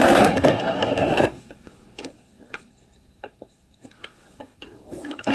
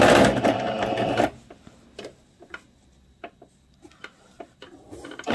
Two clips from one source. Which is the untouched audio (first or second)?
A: second